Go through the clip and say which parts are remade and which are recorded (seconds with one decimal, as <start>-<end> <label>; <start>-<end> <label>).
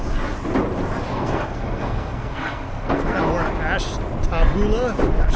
0.0-1.1 recorded; 1.1-3.2 remade; 3.2-5.4 recorded